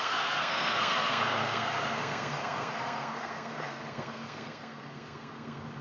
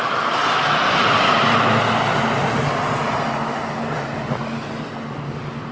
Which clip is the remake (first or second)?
first